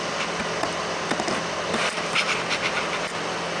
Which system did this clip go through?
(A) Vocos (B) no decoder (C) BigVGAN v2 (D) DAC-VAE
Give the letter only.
B